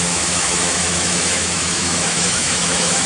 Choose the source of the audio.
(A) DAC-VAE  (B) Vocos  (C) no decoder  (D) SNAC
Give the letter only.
A